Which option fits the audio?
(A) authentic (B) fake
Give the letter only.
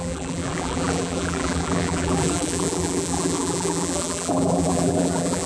B